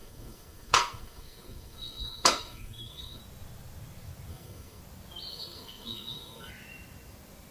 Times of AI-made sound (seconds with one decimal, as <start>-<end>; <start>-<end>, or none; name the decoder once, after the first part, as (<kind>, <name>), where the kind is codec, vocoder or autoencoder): 0.0-3.2 (codec, SNAC); 4.3-4.8; 5.3-6.5